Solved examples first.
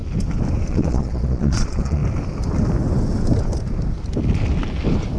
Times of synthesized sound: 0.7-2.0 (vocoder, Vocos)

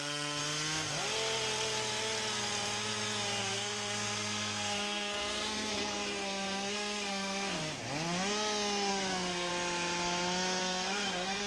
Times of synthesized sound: 0.0-0.4 (codec, SNAC); 3.4-7.6; 8.9-9.5; 10.6-11.5

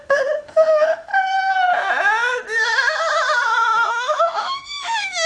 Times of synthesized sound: 0.0-1.1 (autoencoder, DAC-VAE); 3.9-5.3

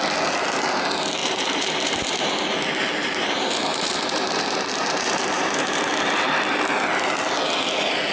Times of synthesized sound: 1.2-2.3 (vocoder, BigVGAN v2); 3.0-5.8

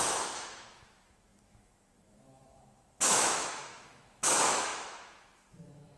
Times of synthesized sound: 0.0-6.0 (autoencoder, DAC-VAE)

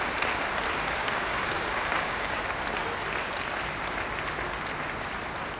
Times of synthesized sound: 1.0-2.4 (codec, DAC)

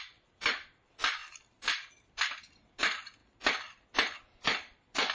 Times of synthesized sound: 0.0-3.2 (vocoder, BigVGAN v2); 4.2-5.1

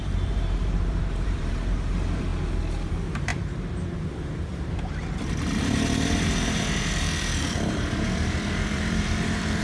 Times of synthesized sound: 0.0-2.3 (vocoder, BigVGAN v2); 2.9-4.5; 5.6-9.6